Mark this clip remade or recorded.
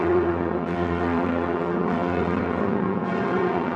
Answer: remade